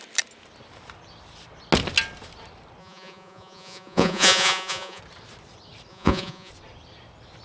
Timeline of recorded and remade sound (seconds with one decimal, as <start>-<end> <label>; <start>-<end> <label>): 0.0-2.8 recorded; 2.8-5.0 remade; 5.0-5.9 recorded; 5.9-6.5 remade; 6.5-7.4 recorded